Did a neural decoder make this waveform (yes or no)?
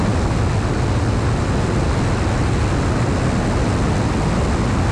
no